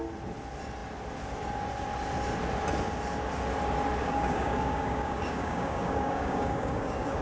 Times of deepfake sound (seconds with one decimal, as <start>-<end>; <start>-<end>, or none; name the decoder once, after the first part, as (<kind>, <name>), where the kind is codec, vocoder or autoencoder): 4.0-7.2 (codec, DAC)